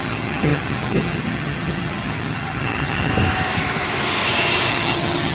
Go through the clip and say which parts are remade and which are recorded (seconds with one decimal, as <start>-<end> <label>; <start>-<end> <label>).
0.0-3.1 remade; 3.1-4.7 recorded; 4.7-5.3 remade